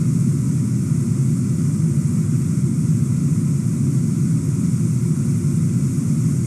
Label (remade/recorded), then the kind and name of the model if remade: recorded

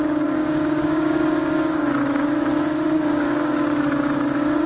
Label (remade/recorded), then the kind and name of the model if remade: remade, codec, DAC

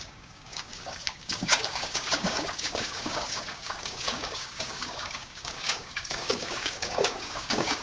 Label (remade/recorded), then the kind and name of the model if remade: remade, codec, DAC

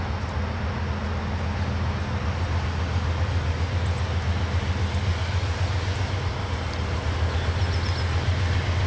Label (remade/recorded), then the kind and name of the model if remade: recorded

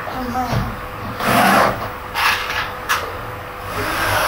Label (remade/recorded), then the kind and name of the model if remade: remade, codec, DAC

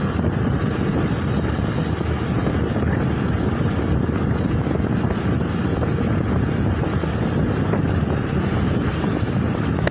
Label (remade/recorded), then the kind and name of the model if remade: recorded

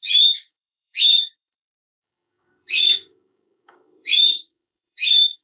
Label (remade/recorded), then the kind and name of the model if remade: remade, codec, DAC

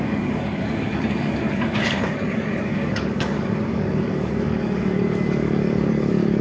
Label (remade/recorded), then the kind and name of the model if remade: remade, codec, DAC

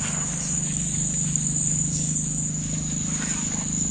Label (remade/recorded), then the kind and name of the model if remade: remade, codec, DAC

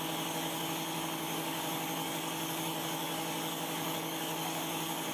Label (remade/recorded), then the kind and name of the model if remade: remade, codec, DAC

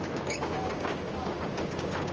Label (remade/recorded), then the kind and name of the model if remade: remade, codec, DAC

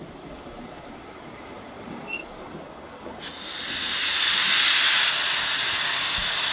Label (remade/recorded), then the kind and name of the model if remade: recorded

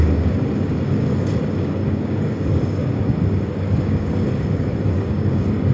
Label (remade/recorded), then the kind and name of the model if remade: remade, codec, DAC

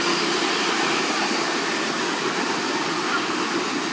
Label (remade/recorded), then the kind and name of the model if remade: recorded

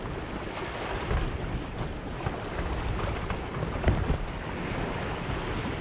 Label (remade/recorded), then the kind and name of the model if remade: recorded